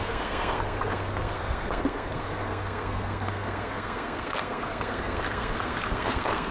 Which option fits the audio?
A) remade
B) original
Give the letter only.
A